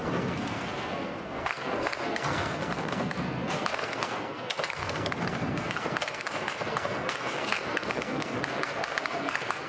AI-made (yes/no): yes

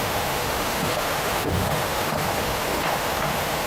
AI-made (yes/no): yes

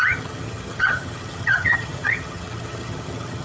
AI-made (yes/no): yes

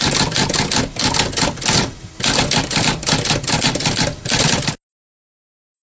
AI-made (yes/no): no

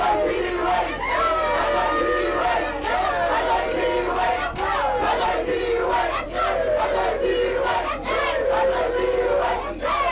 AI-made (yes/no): no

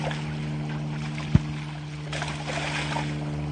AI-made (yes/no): no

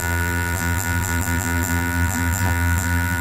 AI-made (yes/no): yes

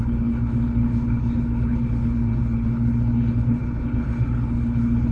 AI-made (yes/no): yes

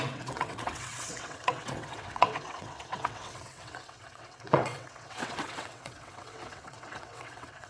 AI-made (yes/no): yes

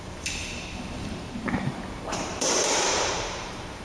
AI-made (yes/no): yes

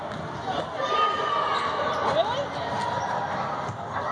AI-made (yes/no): no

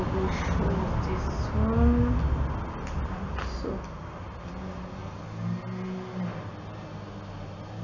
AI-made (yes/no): no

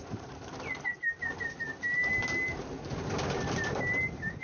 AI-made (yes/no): no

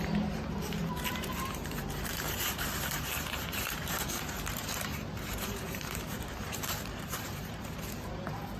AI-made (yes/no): yes